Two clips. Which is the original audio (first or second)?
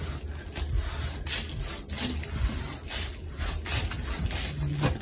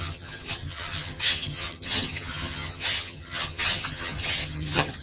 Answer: first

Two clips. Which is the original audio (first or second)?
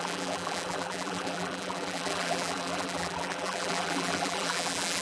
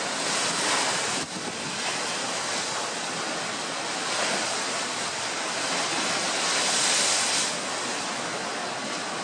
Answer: second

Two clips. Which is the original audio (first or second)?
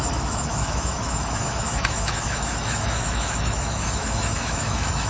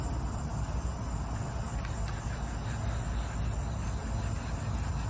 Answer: second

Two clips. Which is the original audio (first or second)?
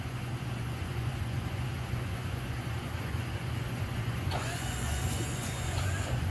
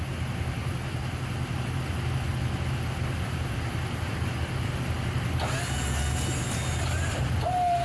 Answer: second